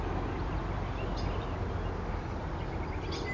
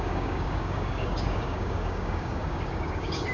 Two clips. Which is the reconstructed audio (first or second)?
second